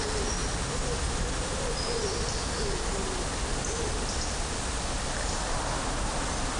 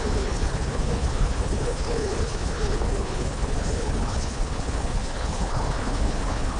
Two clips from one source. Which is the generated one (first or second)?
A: second